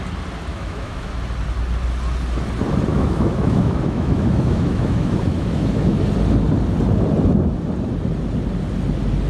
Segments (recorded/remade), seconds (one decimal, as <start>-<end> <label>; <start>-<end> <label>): 0.0-0.5 recorded; 0.5-1.1 remade; 1.1-2.9 recorded; 2.9-6.0 remade; 6.0-9.3 recorded